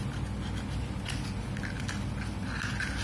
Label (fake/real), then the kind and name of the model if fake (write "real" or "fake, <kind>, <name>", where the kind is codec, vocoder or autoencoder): real